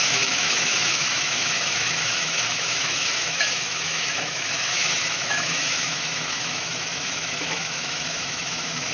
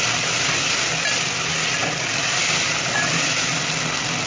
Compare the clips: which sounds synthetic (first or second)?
first